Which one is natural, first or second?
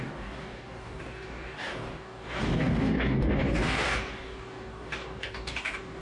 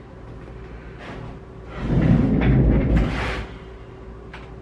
second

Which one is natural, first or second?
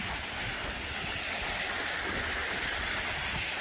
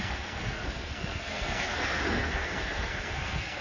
first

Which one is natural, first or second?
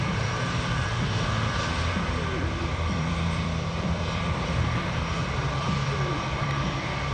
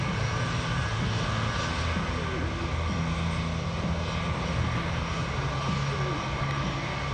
second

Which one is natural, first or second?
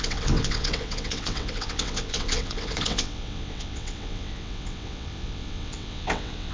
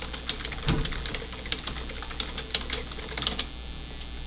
second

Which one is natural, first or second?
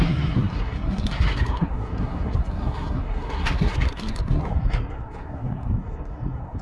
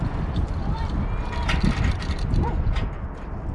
second